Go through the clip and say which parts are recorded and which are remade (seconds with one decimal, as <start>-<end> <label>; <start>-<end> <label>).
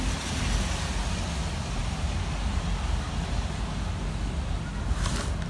0.0-5.5 recorded